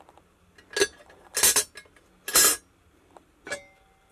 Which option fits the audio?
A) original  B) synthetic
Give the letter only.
A